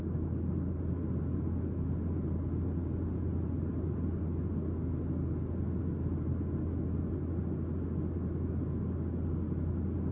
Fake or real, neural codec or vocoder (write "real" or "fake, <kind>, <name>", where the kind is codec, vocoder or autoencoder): real